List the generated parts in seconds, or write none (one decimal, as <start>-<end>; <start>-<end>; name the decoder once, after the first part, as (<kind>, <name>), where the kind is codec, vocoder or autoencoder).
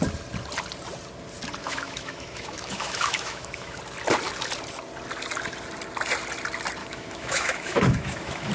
1.6-3.8 (autoencoder, DAC-VAE); 6.8-8.5